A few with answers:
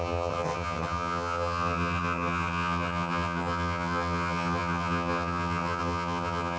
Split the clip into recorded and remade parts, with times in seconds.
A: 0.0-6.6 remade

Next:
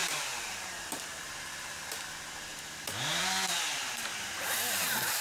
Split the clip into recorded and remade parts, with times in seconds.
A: 0.0-1.3 remade; 1.3-4.1 recorded; 4.1-5.2 remade

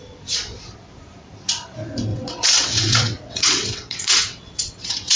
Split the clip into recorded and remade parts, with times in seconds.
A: 0.0-2.1 recorded; 2.1-5.2 remade

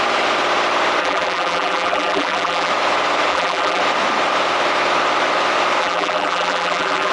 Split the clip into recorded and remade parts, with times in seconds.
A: 0.0-1.0 recorded; 1.0-2.7 remade; 2.7-3.3 recorded; 3.3-3.8 remade; 3.8-5.8 recorded; 5.8-7.1 remade

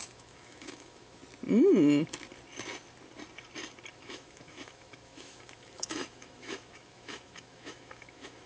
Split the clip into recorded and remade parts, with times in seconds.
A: 0.0-1.2 remade; 1.2-3.9 recorded; 3.9-8.5 remade